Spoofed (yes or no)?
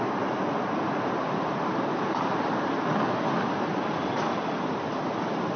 no